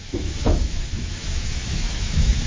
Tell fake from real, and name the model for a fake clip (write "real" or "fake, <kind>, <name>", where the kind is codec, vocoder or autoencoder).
fake, autoencoder, DAC-VAE